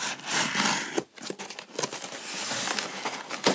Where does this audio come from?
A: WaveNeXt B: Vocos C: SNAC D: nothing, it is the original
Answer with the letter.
D